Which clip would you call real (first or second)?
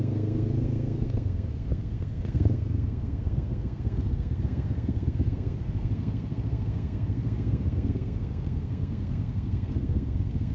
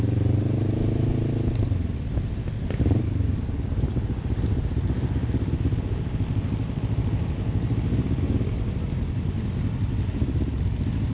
second